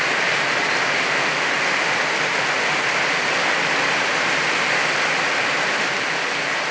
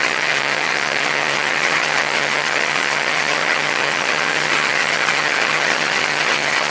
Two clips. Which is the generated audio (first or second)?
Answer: second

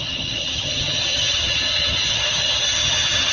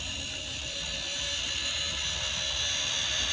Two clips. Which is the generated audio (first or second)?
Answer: first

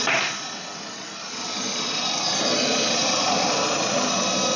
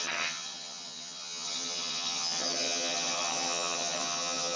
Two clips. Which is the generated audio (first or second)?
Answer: second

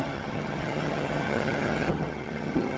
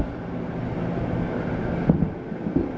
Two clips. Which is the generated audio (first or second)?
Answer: first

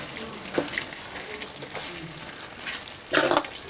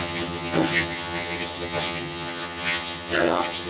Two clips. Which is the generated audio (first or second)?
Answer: second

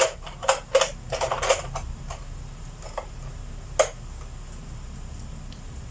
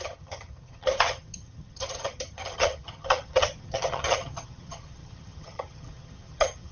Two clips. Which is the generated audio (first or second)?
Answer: second